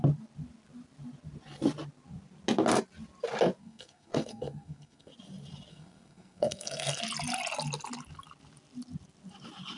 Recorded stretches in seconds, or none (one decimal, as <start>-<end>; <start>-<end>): 0.0-3.6; 5.1-5.7; 7.0-9.8